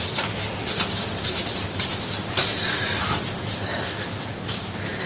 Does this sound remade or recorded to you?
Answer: recorded